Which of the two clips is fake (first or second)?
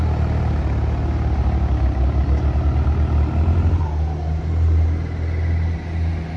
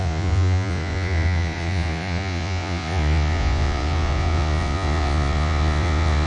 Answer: second